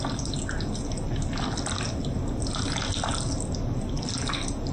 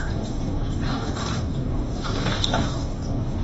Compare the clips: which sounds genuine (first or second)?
first